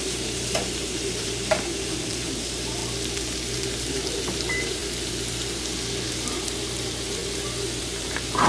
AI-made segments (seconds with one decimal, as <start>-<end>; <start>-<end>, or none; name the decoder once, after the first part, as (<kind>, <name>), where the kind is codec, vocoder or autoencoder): 0.0-2.8 (vocoder, BigVGAN v2); 3.5-4.8; 6.0-7.2; 7.8-8.5